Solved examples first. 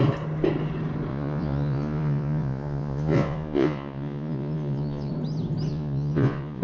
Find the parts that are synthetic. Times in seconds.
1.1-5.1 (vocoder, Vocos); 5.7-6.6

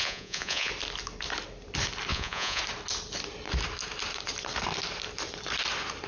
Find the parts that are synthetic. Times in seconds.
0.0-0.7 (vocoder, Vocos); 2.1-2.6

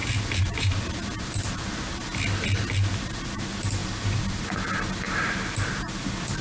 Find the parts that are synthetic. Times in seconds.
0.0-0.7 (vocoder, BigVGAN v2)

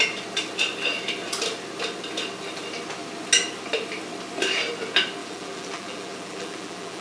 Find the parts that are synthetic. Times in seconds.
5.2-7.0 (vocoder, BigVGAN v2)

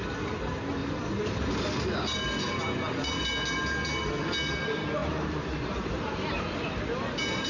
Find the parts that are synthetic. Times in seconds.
0.8-1.5 (vocoder, BigVGAN v2); 5.0-6.1

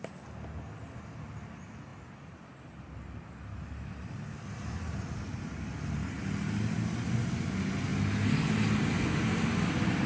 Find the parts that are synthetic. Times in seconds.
none

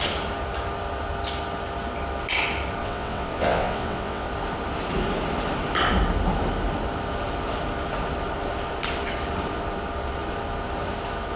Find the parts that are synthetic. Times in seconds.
2.8-4.3 (vocoder, WaveNeXt)